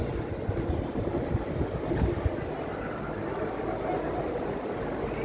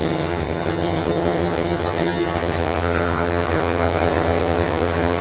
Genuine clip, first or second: first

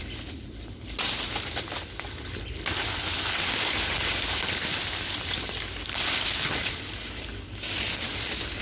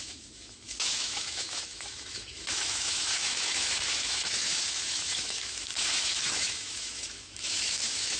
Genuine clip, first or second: first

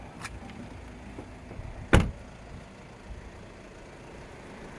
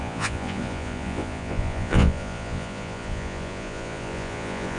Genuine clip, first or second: first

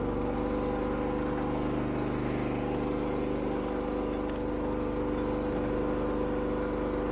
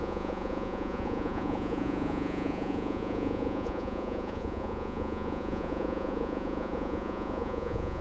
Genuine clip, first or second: first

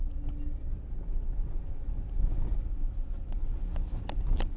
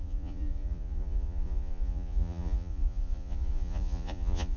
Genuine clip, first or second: first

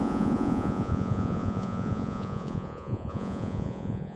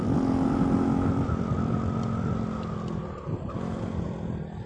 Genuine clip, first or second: second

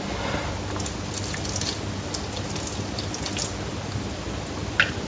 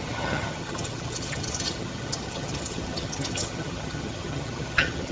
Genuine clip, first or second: first